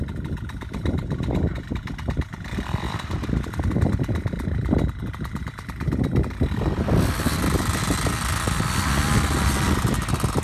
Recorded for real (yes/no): yes